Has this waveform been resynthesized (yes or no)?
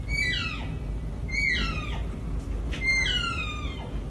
no